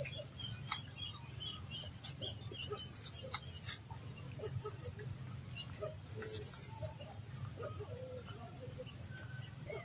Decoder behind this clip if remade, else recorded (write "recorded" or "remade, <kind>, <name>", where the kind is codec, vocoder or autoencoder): recorded